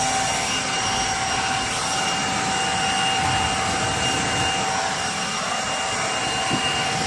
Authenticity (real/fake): real